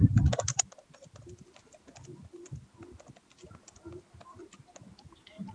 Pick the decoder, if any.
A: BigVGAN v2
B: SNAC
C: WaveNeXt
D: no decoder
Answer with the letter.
D